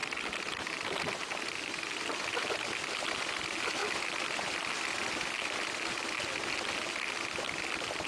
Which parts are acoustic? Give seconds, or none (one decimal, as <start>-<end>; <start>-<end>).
0.0-8.1

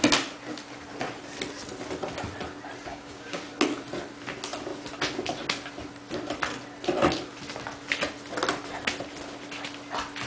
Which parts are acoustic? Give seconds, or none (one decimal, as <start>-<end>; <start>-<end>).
0.0-2.9; 3.4-10.3